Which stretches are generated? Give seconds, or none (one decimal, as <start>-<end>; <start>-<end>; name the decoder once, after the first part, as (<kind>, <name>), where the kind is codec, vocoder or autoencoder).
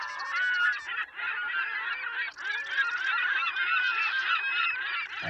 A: 2.8-5.3 (vocoder, BigVGAN v2)